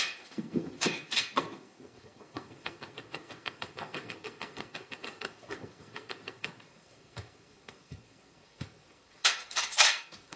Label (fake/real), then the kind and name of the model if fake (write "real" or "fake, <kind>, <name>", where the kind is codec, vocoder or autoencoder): fake, codec, SNAC